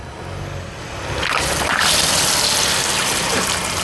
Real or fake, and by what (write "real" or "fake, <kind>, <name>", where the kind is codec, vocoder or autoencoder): real